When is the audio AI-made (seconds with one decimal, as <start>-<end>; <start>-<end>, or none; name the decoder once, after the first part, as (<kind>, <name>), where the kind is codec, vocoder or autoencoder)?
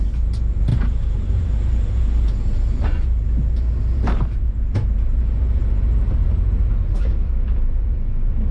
0.0-8.5 (vocoder, BigVGAN v2)